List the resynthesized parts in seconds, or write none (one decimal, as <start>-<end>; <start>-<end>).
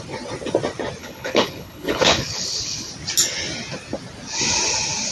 1.0-2.9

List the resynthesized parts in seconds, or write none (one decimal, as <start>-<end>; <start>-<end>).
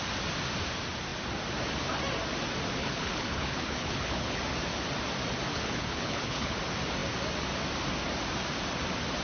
2.8-4.4; 5.5-6.6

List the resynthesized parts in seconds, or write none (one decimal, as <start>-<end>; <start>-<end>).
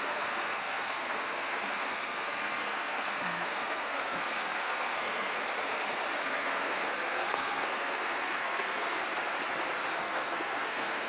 0.0-5.4; 6.2-9.0; 9.9-11.1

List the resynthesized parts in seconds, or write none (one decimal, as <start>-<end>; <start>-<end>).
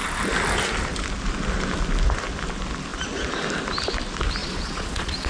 4.4-5.3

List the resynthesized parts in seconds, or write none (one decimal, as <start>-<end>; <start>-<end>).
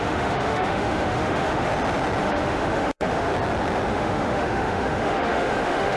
0.0-1.7; 2.2-3.3; 3.9-6.0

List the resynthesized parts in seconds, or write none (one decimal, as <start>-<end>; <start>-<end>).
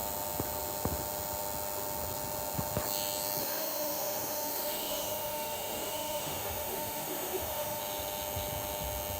3.4-7.8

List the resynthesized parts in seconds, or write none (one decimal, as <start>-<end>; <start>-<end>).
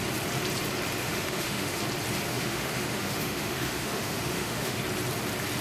1.0-1.8; 2.3-4.8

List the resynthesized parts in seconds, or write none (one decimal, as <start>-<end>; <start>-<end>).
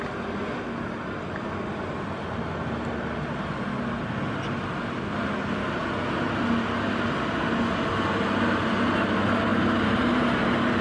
9.5-10.8